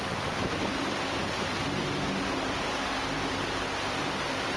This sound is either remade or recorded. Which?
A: recorded